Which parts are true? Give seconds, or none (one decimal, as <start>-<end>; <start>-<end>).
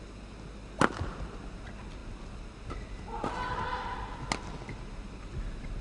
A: 0.0-5.8